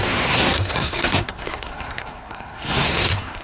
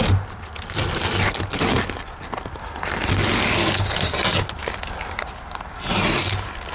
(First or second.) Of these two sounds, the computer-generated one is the first